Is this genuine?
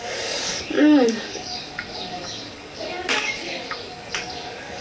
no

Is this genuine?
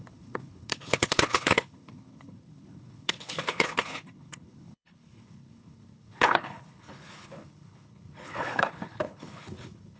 no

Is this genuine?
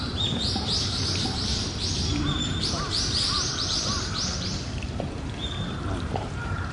no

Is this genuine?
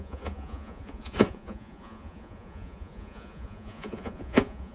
no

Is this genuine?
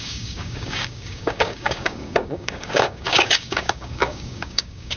no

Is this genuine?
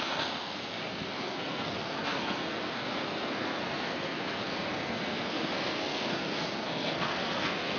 no